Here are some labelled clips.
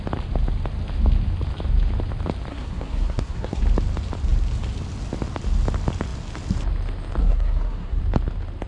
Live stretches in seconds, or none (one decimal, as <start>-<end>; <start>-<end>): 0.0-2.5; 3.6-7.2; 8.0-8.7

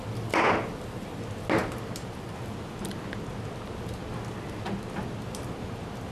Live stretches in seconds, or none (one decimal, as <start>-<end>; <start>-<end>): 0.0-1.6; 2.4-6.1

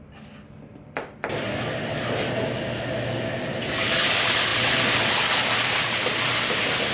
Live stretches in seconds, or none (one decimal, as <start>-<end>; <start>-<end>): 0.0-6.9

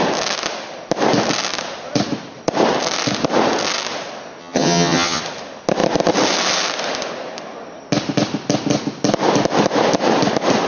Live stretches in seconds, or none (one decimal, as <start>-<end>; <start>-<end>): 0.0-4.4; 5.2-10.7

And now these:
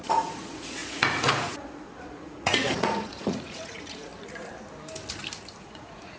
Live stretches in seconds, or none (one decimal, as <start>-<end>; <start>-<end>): 4.1-5.6

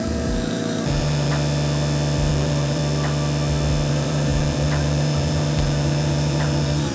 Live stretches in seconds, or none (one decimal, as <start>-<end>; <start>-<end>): 1.3-2.3; 2.8-3.9

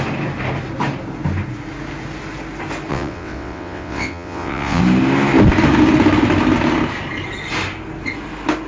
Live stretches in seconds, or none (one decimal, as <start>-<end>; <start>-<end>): 0.0-2.9; 4.8-8.7